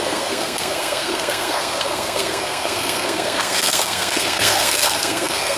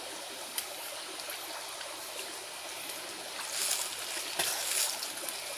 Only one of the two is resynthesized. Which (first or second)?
first